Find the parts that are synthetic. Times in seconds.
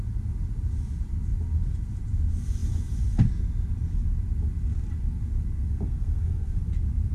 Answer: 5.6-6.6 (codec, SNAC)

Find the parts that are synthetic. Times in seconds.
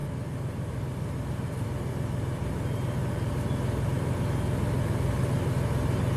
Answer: none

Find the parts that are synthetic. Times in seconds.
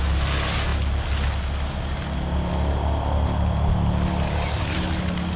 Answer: none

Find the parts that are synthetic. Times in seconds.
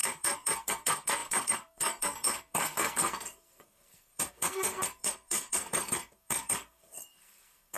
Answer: 0.0-7.8 (codec, SNAC)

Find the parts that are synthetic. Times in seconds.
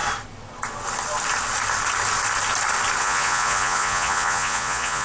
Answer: 3.0-5.0 (vocoder, Vocos)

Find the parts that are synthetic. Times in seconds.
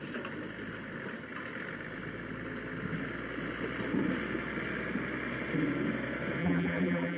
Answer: 6.4-7.2 (vocoder, BigVGAN v2)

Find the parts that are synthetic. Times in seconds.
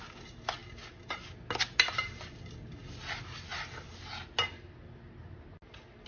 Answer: none